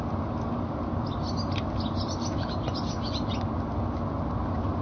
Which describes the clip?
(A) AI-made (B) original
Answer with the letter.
B